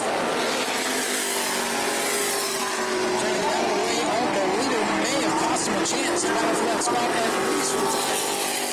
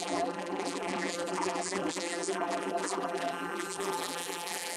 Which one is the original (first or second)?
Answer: first